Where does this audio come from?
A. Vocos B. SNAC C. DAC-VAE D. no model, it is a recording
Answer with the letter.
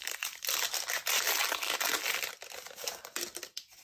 D